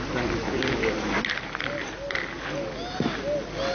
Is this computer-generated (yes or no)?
no